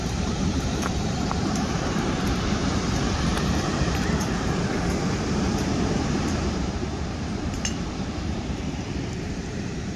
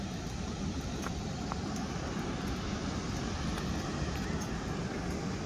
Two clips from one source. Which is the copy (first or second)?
first